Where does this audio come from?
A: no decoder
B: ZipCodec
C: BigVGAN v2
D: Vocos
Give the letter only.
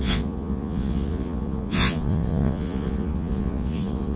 D